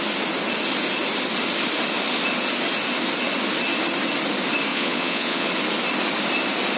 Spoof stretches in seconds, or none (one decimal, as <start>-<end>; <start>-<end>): 4.7-5.5